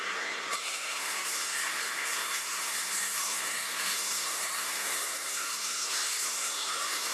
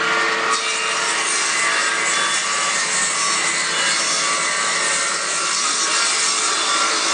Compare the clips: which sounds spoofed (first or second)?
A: first